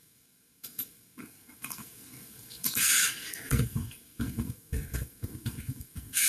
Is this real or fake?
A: fake